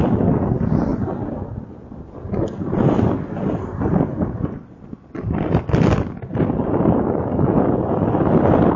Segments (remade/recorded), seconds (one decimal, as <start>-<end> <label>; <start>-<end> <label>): 0.0-0.9 remade; 0.9-1.9 recorded; 1.9-8.8 remade